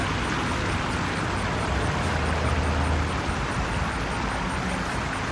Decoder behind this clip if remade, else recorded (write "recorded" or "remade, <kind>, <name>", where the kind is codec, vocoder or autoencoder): recorded